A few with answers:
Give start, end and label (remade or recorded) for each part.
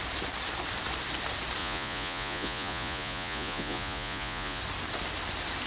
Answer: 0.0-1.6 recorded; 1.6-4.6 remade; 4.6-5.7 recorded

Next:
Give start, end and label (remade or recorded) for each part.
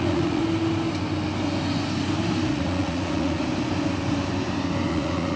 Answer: 0.0-0.4 remade; 0.4-2.5 recorded; 2.5-3.5 remade; 3.5-4.9 recorded; 4.9-5.4 remade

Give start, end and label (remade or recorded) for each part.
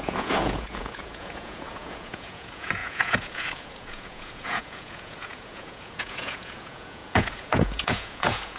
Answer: 0.0-8.6 remade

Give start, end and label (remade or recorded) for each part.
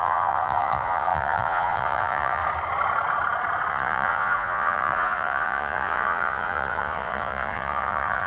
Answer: 0.0-2.4 remade; 2.4-3.7 recorded; 3.7-8.3 remade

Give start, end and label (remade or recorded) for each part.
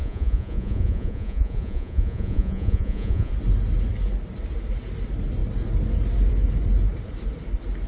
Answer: 0.0-3.3 remade; 3.3-7.9 recorded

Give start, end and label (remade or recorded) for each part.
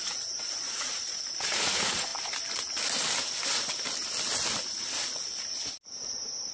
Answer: 0.0-2.1 remade; 2.1-6.0 recorded; 6.0-6.5 remade